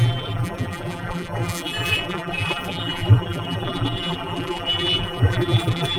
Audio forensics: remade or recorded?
remade